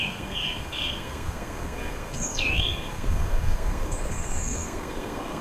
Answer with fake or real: fake